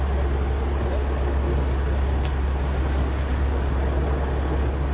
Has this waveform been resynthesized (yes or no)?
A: no